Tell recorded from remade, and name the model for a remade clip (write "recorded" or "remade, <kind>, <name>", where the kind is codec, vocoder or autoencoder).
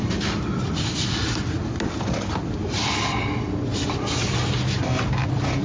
recorded